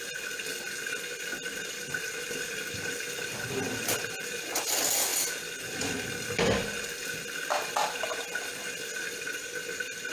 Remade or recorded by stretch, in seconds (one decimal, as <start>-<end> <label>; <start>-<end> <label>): 0.0-10.1 recorded